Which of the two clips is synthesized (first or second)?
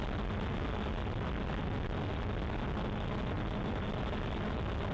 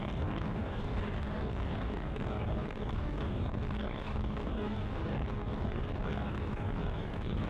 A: second